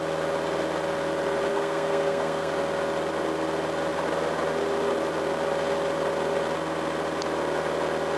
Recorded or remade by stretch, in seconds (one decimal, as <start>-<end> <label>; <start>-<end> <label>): 0.0-1.5 recorded; 1.5-2.5 remade; 2.5-8.2 recorded